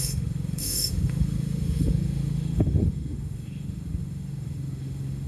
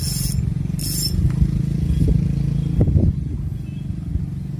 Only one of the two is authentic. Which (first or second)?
second